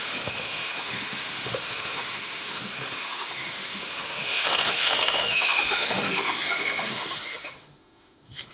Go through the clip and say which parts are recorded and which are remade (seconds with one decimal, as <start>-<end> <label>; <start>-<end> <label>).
0.0-8.5 remade

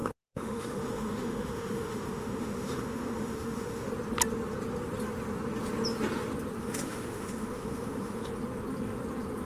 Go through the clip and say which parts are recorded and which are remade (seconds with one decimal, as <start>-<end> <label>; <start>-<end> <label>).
0.0-3.9 remade; 3.9-6.6 recorded; 6.6-8.3 remade; 8.3-9.5 recorded